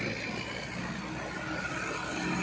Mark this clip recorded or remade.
recorded